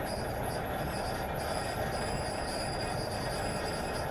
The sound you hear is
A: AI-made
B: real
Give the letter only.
B